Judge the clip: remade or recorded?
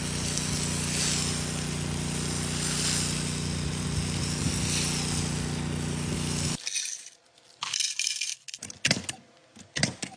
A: recorded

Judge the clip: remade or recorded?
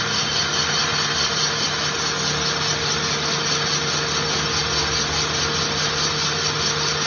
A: recorded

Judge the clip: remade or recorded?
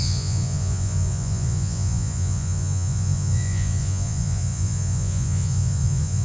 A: remade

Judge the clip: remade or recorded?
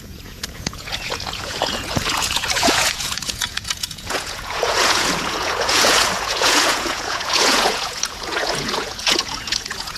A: remade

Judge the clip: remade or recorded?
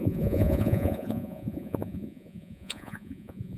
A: remade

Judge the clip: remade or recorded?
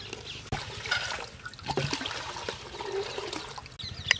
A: recorded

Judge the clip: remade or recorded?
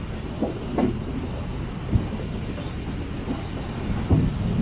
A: recorded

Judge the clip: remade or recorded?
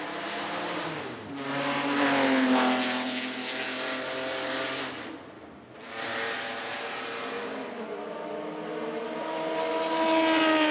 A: recorded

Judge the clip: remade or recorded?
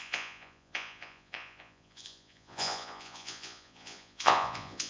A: remade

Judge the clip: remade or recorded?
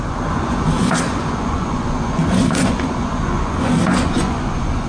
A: remade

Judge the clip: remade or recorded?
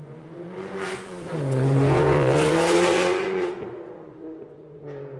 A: remade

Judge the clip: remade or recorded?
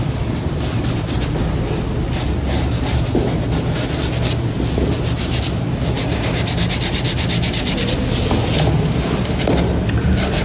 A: recorded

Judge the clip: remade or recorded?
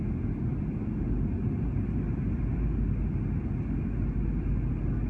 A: recorded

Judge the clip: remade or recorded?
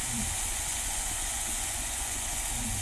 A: remade